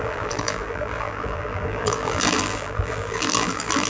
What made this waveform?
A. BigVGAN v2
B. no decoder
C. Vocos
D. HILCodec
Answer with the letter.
A